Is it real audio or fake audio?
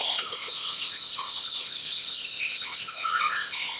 fake